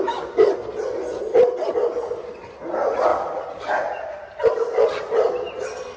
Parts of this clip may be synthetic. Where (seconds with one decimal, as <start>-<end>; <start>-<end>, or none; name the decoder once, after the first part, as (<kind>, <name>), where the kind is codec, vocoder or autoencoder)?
3.1-5.3 (vocoder, BigVGAN v2)